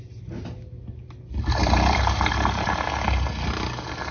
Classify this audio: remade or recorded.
recorded